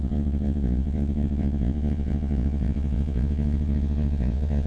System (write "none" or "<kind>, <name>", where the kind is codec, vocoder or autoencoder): vocoder, Vocos